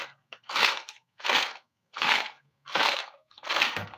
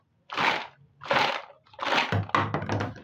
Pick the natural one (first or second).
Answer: second